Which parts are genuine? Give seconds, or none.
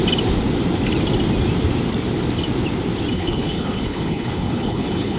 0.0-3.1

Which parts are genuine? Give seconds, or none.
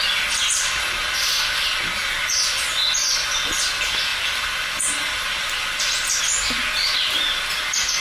0.0-8.0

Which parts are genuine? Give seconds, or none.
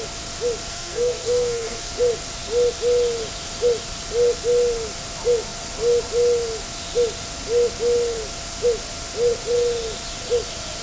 0.0-0.7; 1.9-10.8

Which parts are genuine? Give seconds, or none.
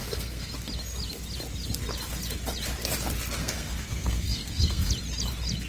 0.5-3.4; 4.9-5.7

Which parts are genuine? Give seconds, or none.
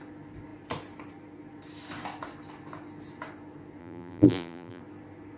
0.0-3.8; 4.8-5.4